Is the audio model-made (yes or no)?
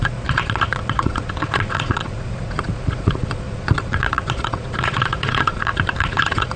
yes